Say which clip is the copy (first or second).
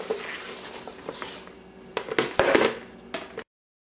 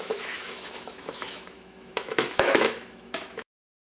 second